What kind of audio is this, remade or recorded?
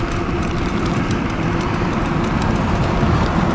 remade